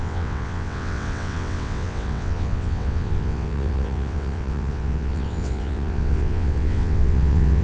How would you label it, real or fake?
fake